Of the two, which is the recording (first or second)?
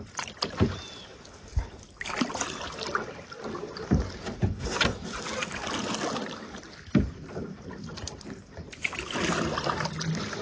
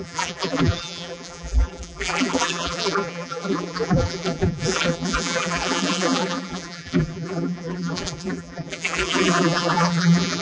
first